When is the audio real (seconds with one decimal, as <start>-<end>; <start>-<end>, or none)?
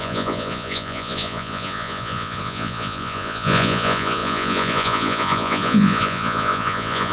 none